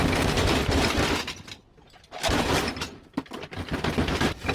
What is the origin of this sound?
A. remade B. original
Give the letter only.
A